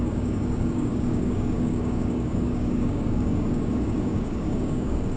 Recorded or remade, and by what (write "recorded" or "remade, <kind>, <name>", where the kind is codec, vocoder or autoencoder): remade, codec, DAC